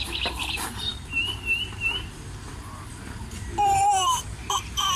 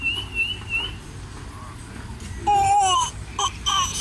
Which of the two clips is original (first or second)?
second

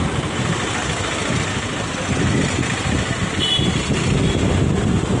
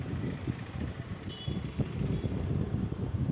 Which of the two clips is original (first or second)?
first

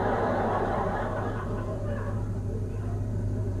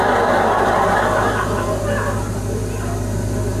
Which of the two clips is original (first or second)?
second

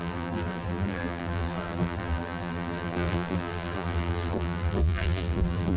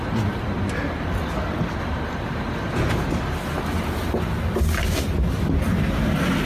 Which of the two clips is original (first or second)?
second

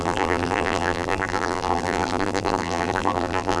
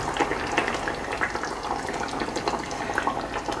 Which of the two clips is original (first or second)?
second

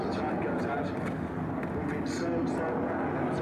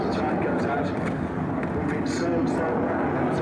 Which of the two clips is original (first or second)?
first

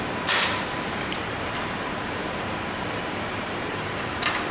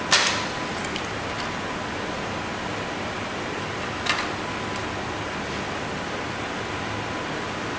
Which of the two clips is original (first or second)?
second